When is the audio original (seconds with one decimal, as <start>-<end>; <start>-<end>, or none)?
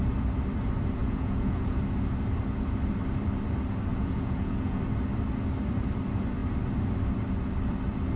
0.0-1.0; 1.8-3.9; 4.8-8.2